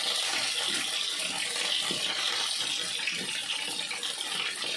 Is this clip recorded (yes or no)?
yes